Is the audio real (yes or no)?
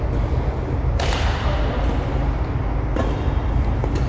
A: yes